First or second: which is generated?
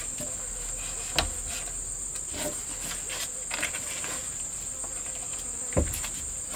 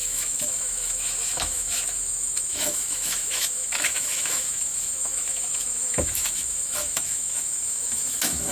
second